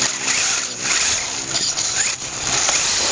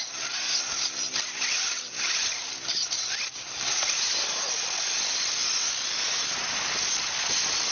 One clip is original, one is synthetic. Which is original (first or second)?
second